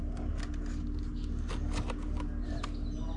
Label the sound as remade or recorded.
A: recorded